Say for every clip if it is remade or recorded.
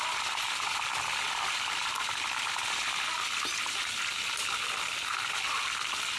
recorded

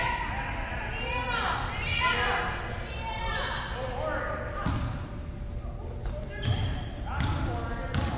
recorded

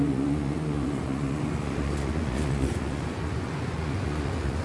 remade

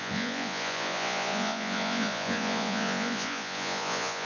remade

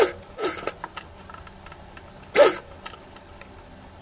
recorded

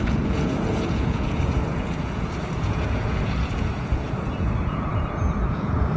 remade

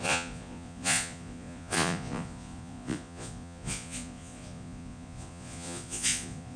remade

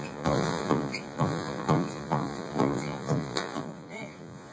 remade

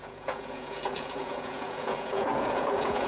remade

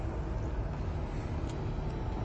recorded